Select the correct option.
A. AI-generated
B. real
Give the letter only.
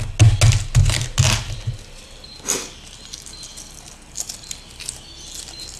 B